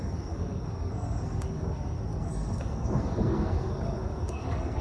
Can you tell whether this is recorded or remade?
remade